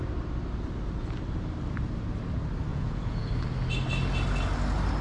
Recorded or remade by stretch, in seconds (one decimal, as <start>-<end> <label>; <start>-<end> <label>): 0.0-2.7 recorded; 2.7-3.3 remade; 3.3-5.0 recorded